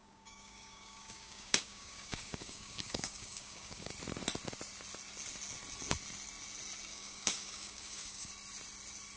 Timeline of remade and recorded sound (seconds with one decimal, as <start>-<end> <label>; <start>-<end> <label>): 0.0-3.9 remade; 3.9-6.9 recorded; 6.9-8.3 remade; 8.3-9.2 recorded